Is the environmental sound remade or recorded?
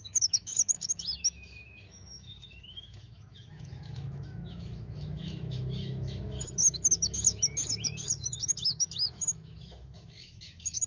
remade